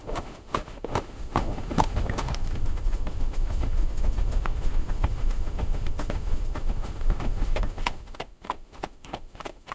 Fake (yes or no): yes